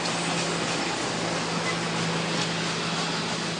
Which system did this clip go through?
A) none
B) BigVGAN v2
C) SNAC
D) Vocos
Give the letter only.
A